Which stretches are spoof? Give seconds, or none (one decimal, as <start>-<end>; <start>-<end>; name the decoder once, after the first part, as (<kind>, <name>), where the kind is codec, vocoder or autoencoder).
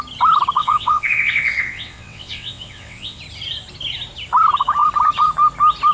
0.6-3.2 (vocoder, WaveNeXt)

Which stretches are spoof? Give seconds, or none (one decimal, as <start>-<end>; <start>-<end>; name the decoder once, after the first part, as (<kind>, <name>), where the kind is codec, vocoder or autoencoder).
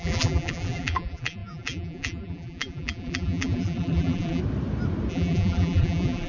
0.0-4.4 (vocoder, BigVGAN v2); 5.1-6.3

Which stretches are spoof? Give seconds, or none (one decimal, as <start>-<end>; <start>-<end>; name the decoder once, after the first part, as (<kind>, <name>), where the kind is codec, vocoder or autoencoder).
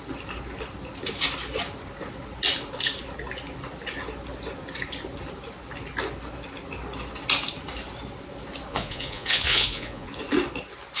8.7-10.2 (vocoder, Vocos)